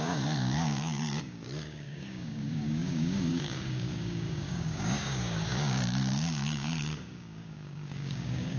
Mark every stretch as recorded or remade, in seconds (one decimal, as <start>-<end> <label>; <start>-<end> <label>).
0.0-8.6 remade